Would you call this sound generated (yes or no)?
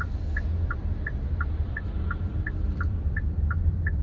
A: no